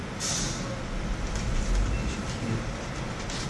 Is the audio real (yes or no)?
yes